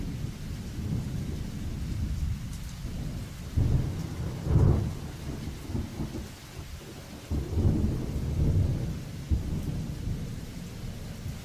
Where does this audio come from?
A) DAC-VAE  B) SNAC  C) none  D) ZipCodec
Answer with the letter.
C